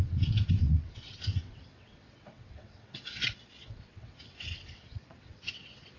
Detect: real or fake fake